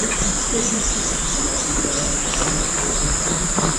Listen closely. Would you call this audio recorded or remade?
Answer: recorded